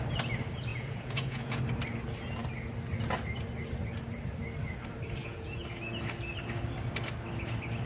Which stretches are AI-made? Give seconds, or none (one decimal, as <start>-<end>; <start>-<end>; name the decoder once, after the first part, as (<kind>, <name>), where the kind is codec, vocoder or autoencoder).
0.7-1.6 (vocoder, Vocos); 5.2-5.8

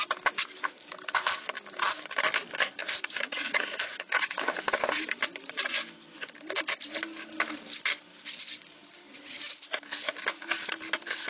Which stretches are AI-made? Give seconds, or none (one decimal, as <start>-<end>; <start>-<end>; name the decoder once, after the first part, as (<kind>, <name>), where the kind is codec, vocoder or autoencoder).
2.8-4.5 (vocoder, Vocos)